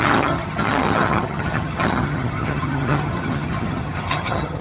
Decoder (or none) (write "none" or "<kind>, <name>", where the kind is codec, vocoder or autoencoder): vocoder, HiFi-GAN